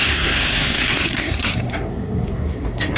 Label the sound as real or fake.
fake